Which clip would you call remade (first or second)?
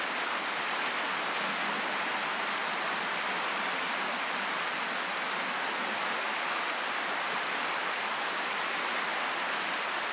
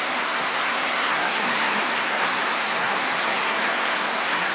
second